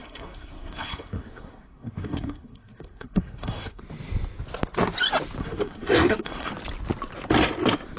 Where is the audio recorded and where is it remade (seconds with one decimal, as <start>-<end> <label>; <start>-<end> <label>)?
0.0-3.8 remade; 3.8-5.4 recorded; 5.4-6.5 remade; 6.5-8.0 recorded